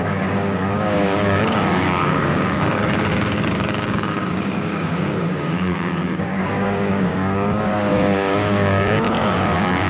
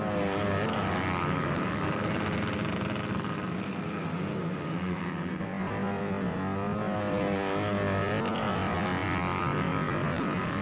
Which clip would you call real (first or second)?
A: second